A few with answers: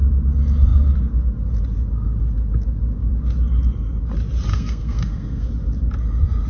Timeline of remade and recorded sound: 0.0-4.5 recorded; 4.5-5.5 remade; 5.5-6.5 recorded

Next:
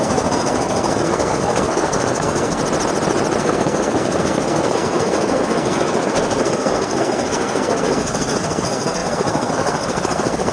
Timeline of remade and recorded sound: 0.0-2.6 remade; 2.6-3.4 recorded; 3.4-10.5 remade

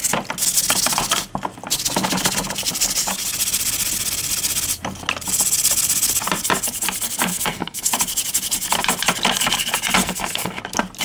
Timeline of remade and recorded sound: 0.0-7.3 recorded; 7.3-7.9 remade; 7.9-10.0 recorded; 10.0-10.6 remade; 10.6-11.0 recorded

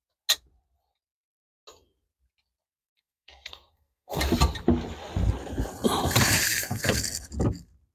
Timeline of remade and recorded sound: 0.0-2.8 recorded; 2.8-4.2 remade; 4.2-6.5 recorded; 6.5-7.3 remade; 7.3-7.9 recorded